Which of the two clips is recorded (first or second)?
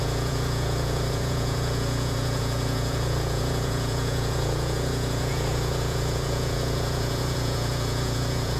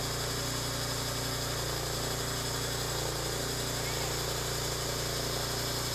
second